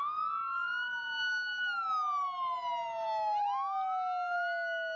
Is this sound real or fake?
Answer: real